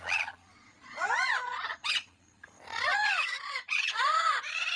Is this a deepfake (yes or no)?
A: yes